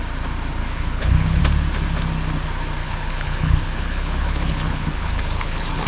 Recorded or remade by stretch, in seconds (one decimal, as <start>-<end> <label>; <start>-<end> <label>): 0.0-0.6 recorded; 0.6-1.4 remade; 1.4-2.8 recorded; 2.8-5.9 remade